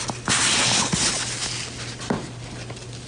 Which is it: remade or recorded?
recorded